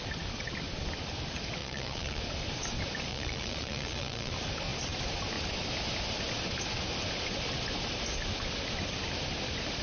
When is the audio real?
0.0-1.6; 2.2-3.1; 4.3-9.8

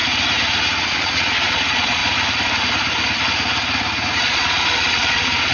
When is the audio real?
0.0-0.8; 2.0-4.2

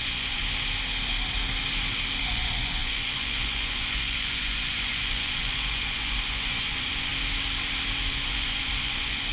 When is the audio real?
0.4-2.2; 7.1-8.1

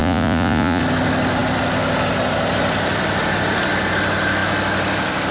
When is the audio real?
0.8-5.3

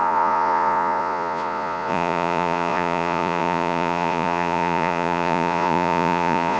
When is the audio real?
none

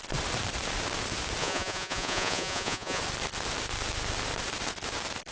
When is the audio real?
0.0-1.4; 3.0-5.3

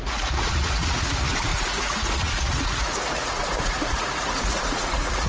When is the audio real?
none

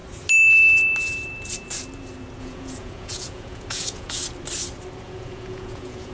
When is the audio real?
0.0-2.4; 4.2-5.0